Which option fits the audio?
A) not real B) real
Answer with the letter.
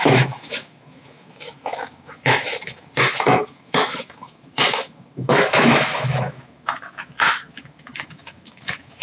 A